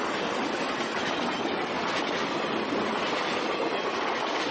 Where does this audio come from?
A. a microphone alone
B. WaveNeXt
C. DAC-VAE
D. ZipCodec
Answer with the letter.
A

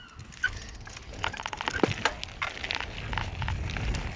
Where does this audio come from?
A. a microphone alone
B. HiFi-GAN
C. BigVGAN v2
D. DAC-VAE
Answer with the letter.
A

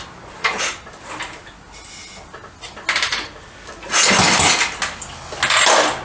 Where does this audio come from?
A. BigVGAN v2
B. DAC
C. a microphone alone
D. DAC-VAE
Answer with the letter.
C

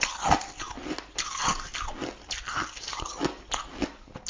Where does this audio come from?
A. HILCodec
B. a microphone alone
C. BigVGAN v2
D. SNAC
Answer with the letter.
B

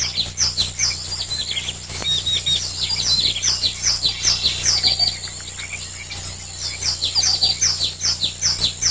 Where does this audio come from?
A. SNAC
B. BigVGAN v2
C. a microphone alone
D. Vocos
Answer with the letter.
C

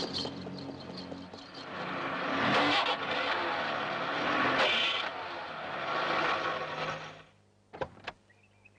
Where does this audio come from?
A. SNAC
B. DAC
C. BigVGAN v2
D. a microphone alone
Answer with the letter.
D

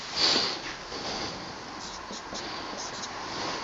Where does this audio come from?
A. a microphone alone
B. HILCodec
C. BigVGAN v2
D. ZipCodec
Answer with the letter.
A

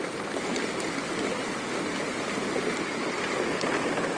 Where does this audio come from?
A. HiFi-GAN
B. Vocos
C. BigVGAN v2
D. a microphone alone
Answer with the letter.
D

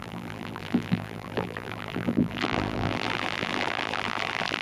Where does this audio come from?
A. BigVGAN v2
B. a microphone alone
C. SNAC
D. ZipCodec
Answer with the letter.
A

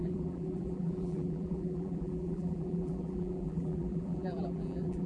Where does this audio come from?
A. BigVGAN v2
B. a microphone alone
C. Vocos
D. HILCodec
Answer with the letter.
A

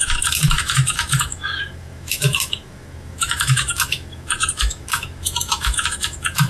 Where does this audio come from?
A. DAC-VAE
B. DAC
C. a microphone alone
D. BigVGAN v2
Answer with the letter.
A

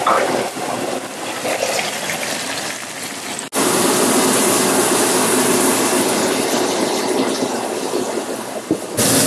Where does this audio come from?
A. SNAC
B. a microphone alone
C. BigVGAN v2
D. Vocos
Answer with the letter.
B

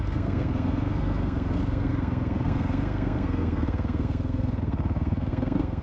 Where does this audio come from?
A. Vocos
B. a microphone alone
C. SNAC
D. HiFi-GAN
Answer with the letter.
C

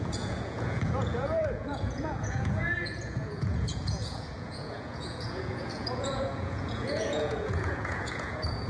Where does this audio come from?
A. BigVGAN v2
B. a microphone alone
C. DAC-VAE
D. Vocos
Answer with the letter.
D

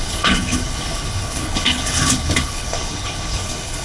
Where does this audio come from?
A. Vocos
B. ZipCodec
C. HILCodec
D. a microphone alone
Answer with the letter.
C